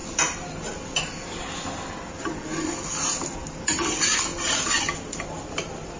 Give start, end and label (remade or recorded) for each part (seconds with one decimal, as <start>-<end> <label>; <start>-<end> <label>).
0.0-6.0 recorded